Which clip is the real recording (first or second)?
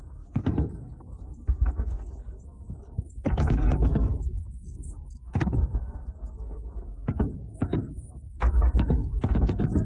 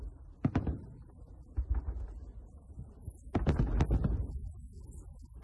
second